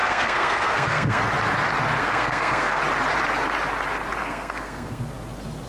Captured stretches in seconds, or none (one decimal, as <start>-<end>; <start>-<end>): 1.2-2.0; 2.8-4.2; 5.0-5.7